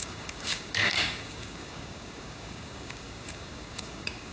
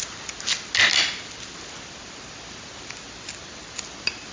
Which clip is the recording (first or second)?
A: second